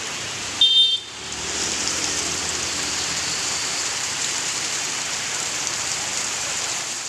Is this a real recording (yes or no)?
no